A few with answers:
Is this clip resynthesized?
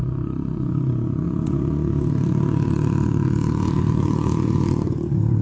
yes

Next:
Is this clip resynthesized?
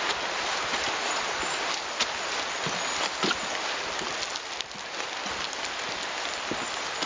no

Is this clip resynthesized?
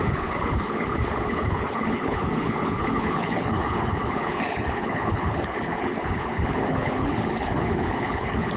yes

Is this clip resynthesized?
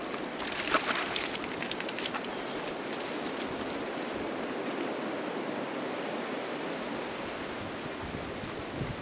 no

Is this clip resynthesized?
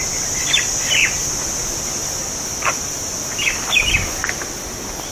no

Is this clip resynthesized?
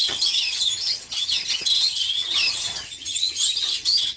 yes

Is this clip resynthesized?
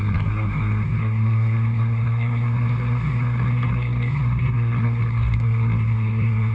yes